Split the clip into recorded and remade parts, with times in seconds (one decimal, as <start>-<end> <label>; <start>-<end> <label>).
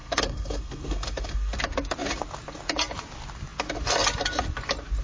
0.0-1.6 remade; 1.6-5.0 recorded